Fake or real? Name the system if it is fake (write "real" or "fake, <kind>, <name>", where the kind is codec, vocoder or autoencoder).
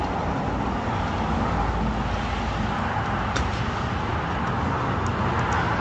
real